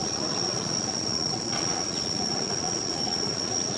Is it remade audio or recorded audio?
remade